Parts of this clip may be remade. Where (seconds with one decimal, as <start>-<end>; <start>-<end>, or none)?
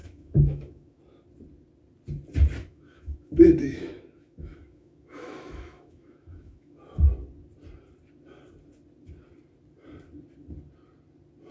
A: 0.0-1.0; 2.6-6.8